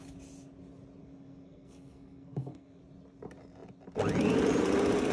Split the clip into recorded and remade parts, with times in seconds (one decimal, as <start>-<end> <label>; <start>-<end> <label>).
0.0-1.0 recorded; 1.0-2.8 remade; 2.8-5.1 recorded